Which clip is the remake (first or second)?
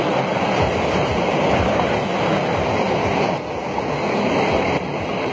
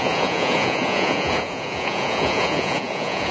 second